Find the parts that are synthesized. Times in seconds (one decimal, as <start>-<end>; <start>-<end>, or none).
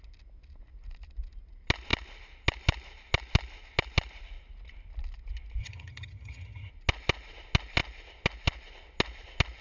5.6-6.7